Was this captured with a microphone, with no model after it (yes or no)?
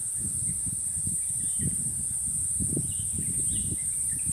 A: yes